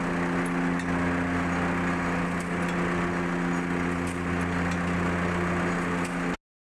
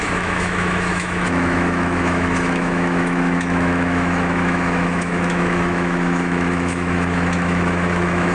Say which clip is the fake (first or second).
second